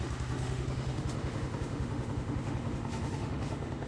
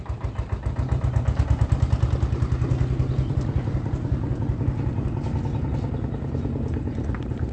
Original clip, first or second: second